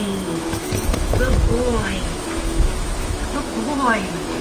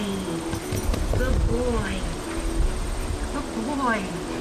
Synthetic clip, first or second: first